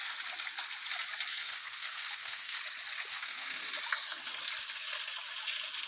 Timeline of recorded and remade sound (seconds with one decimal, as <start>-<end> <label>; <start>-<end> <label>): 0.0-1.3 recorded; 1.3-2.6 remade; 2.6-3.1 recorded; 3.1-3.7 remade; 3.7-5.9 recorded